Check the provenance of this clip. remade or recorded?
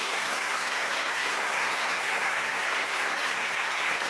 remade